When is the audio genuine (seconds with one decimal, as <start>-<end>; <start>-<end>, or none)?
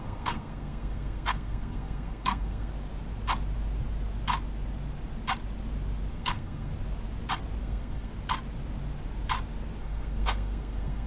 2.7-6.1; 6.7-7.6; 8.1-9.8